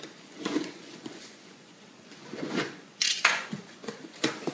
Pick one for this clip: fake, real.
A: fake